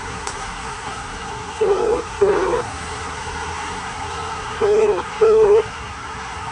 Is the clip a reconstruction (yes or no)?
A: yes